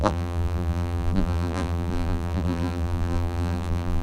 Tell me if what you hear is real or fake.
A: fake